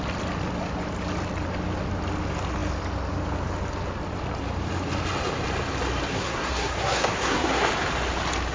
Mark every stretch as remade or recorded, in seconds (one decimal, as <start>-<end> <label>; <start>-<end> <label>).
0.0-6.1 recorded; 6.1-7.7 remade; 7.7-8.5 recorded

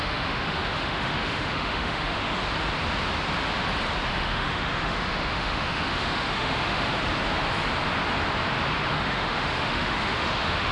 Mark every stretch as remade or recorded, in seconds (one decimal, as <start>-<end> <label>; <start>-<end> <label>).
0.0-2.4 remade; 2.4-4.1 recorded; 4.1-6.9 remade; 6.9-8.9 recorded; 8.9-10.7 remade

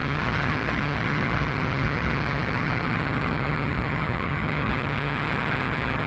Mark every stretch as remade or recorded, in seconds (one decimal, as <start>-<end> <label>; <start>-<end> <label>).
0.0-6.1 remade

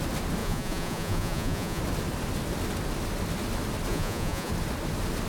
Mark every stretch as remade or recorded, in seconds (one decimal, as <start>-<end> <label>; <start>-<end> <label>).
0.0-0.4 recorded; 0.4-1.8 remade; 1.8-3.9 recorded; 3.9-4.5 remade; 4.5-5.3 recorded

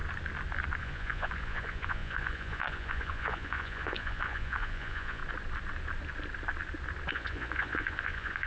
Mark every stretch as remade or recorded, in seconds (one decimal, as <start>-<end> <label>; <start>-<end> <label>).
0.0-0.8 recorded; 0.8-5.2 remade; 5.2-7.1 recorded; 7.1-8.5 remade